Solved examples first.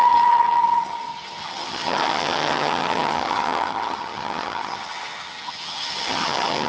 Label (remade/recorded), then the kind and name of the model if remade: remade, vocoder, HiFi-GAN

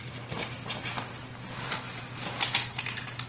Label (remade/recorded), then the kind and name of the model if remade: recorded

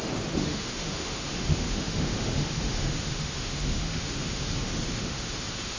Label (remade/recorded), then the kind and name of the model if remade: remade, autoencoder, DAC-VAE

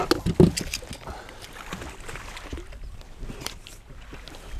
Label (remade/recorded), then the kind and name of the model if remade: recorded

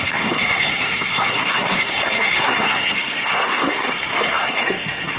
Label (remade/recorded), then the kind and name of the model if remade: remade, codec, SNAC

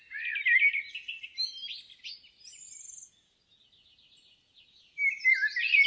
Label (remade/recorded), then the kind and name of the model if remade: recorded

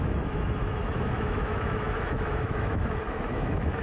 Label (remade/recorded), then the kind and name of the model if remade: remade, autoencoder, DAC-VAE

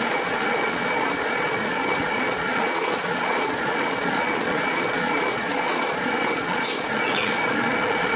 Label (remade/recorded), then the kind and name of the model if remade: remade, vocoder, Vocos